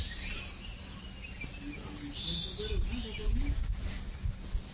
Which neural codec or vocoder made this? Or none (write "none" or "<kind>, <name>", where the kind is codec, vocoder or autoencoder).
none